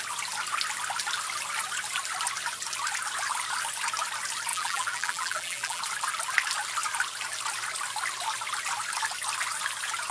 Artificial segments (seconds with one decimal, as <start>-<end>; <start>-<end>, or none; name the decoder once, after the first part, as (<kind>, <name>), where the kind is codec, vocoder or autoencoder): 4.5-5.8 (vocoder, BigVGAN v2)